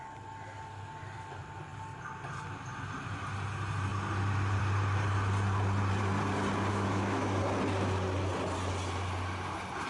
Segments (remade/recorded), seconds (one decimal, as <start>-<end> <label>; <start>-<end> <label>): 0.0-6.7 recorded; 6.7-7.3 remade; 7.3-9.9 recorded